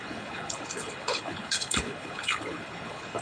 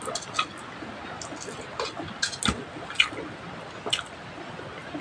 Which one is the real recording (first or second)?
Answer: second